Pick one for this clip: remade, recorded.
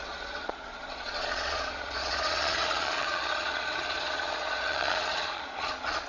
remade